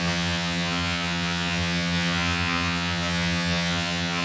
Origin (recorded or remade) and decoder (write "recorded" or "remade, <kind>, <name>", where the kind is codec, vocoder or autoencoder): remade, vocoder, HiFi-GAN